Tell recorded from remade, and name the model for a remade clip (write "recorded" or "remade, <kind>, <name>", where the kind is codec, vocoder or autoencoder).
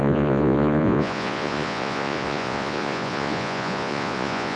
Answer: remade, vocoder, Vocos